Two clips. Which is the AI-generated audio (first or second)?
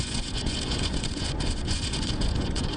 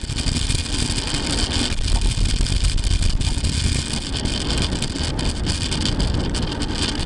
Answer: first